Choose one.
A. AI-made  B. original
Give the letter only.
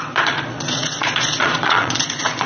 A